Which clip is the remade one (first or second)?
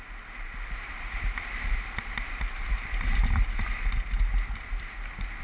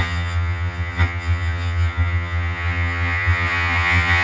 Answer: second